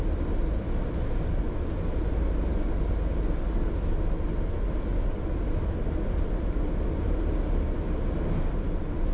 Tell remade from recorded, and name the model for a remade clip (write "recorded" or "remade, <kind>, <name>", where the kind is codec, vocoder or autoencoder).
recorded